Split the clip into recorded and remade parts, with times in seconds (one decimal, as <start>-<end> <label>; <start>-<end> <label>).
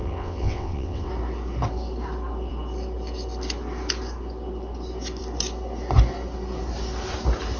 0.0-1.1 remade; 1.1-7.6 recorded